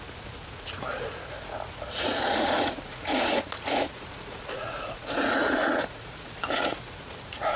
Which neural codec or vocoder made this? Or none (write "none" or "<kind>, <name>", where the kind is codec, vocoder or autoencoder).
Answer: vocoder, Vocos